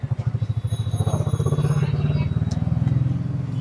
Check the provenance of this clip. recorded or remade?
recorded